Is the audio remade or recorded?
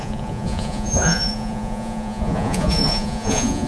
remade